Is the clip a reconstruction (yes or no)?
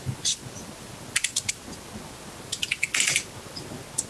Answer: no